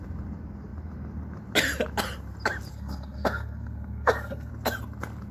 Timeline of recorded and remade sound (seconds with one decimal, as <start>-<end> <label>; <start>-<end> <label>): 0.0-2.7 recorded; 2.7-4.5 remade; 4.5-5.3 recorded